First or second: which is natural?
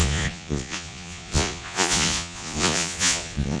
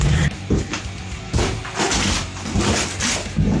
second